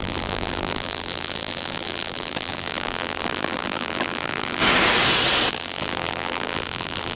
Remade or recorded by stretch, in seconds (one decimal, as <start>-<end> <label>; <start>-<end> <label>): 0.0-4.6 remade; 4.6-5.5 recorded; 5.5-7.2 remade